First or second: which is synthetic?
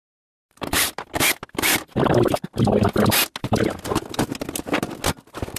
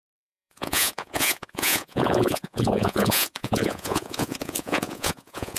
second